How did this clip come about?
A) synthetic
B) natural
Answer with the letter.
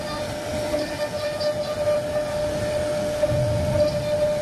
B